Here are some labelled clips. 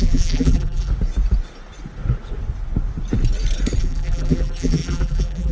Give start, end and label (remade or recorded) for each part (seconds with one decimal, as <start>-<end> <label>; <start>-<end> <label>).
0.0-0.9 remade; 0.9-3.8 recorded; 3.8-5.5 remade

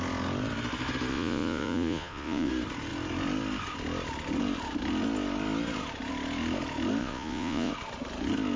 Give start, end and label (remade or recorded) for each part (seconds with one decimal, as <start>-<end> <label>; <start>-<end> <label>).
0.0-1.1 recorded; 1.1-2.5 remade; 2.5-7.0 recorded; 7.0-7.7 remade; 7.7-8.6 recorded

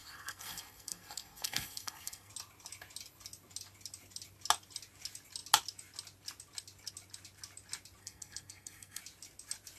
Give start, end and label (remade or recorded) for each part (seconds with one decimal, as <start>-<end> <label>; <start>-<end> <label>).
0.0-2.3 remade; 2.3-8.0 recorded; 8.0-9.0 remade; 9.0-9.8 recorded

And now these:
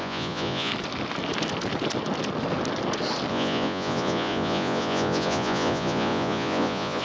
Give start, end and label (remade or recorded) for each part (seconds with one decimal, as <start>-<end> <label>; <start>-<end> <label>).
0.0-0.7 remade; 0.7-3.3 recorded; 3.3-7.0 remade

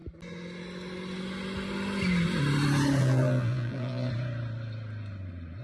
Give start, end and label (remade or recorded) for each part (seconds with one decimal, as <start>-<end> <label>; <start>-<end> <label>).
0.0-3.0 recorded; 3.0-4.1 remade; 4.1-5.6 recorded

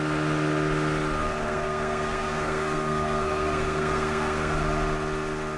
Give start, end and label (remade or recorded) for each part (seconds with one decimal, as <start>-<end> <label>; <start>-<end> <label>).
0.0-1.2 recorded; 1.2-4.6 remade; 4.6-5.6 recorded

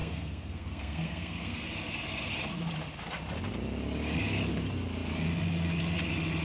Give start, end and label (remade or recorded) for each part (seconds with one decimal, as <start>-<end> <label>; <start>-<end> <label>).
0.0-1.6 remade; 1.6-6.4 recorded